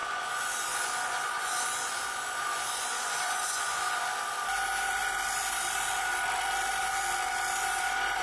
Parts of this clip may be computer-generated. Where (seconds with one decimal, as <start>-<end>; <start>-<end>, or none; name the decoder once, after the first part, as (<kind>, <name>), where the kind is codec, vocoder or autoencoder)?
0.0-4.0 (vocoder, Vocos)